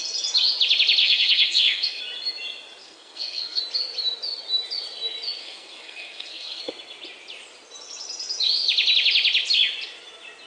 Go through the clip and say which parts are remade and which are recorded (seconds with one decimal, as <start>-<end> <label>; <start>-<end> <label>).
0.0-1.0 recorded; 1.0-2.0 remade; 2.0-2.8 recorded; 2.8-3.6 remade; 3.6-5.4 recorded; 5.4-6.6 remade; 6.6-10.5 recorded